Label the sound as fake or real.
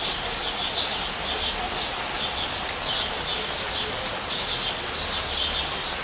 real